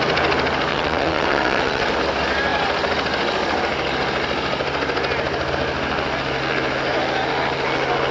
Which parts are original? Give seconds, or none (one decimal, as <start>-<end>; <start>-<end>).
0.0-0.7; 1.9-8.1

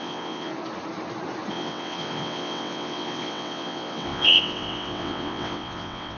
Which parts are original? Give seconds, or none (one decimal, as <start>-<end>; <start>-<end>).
0.5-1.5

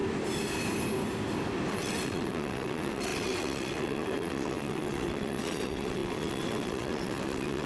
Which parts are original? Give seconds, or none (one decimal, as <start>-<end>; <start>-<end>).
0.0-1.7

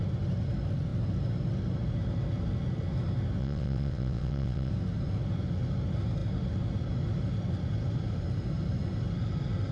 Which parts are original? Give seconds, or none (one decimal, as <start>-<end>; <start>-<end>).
0.0-3.4; 4.7-9.7